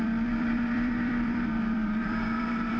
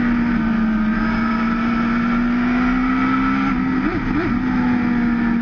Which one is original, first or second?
second